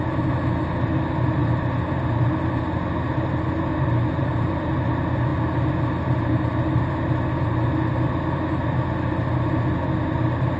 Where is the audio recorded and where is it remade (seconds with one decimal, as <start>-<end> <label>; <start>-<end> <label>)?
0.0-10.6 recorded